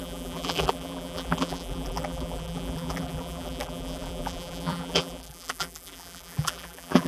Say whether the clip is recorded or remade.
remade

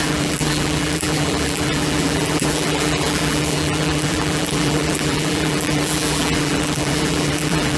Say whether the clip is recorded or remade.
remade